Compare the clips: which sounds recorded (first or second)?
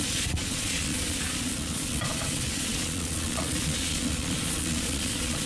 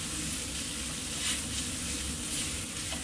second